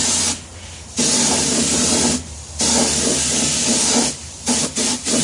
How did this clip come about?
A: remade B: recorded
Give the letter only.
B